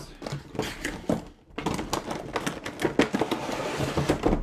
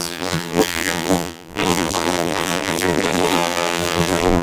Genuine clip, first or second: first